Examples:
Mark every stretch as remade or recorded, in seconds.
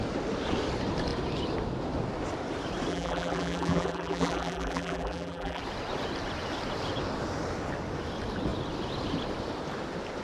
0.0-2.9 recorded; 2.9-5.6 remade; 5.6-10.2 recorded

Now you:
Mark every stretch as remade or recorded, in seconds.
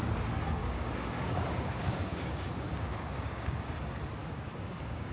0.0-0.6 recorded; 0.6-3.7 remade; 3.7-4.2 recorded; 4.2-5.1 remade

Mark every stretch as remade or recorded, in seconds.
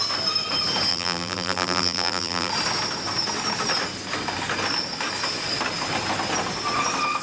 0.0-0.9 recorded; 0.9-2.5 remade; 2.5-7.2 recorded